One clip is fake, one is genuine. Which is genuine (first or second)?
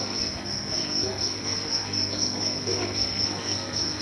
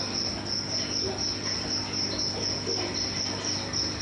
second